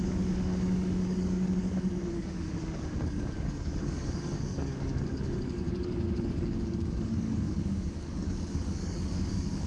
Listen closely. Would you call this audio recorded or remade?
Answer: remade